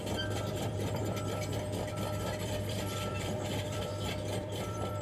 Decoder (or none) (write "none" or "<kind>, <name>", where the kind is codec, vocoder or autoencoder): vocoder, BigVGAN v2